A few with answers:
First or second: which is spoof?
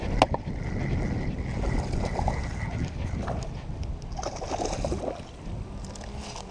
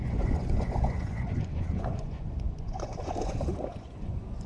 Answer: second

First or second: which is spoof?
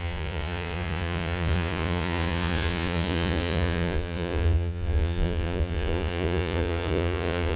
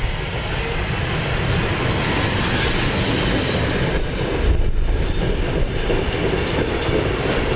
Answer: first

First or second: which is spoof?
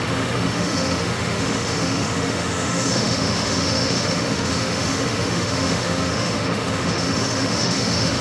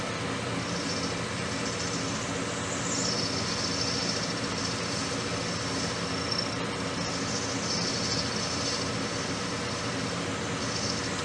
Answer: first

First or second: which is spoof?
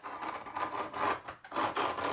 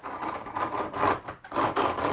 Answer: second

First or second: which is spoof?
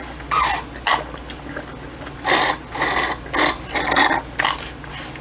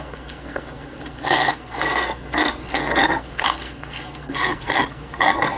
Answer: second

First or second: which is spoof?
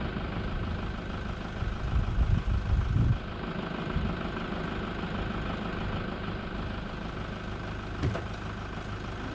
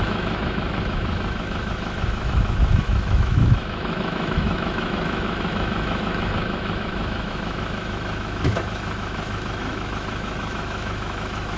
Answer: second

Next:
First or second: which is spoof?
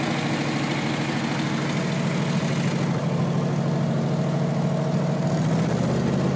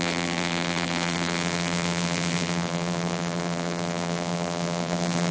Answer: second